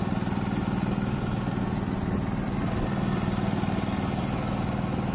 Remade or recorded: recorded